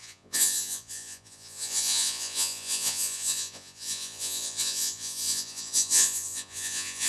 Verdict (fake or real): fake